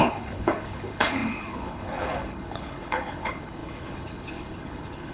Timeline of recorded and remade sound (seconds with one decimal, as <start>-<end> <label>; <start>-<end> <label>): 0.0-5.1 remade